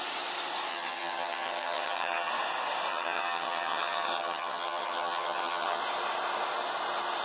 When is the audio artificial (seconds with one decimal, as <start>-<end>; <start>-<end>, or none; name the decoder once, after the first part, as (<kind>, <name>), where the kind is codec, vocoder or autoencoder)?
0.7-2.3 (vocoder, HiFi-GAN); 2.9-5.8